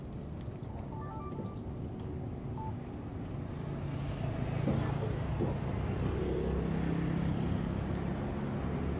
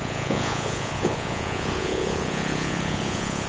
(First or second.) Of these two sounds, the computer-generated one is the second